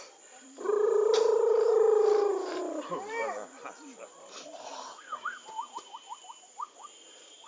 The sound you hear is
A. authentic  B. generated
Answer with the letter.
B